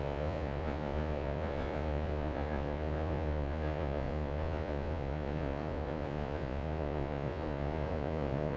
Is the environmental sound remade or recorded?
remade